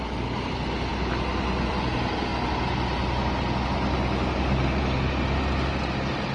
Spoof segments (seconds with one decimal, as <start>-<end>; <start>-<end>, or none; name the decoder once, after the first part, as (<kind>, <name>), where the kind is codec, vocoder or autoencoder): none